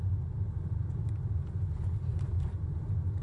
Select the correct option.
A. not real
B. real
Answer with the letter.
B